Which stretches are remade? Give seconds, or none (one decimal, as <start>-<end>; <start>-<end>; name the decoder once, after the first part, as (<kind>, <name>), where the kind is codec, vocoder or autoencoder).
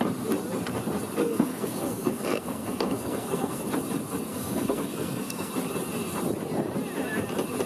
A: 1.2-3.7 (codec, SNAC); 4.3-5.5